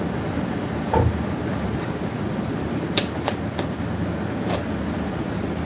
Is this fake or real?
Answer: fake